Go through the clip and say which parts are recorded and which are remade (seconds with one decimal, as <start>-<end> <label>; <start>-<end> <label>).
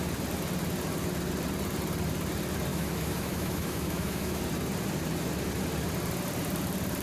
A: 0.0-2.7 recorded; 2.7-4.4 remade; 4.4-7.0 recorded